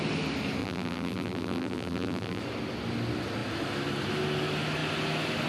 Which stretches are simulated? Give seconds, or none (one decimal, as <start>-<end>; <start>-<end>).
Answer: 0.6-2.4